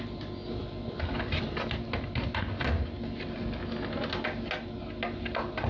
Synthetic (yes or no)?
no